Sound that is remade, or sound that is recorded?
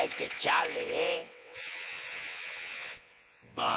remade